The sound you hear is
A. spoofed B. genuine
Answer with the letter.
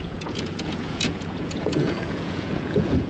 A